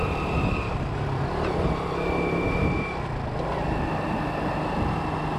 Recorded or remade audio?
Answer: recorded